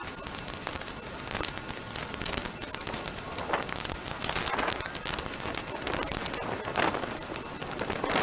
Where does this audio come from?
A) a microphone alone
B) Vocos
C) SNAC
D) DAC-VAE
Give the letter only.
A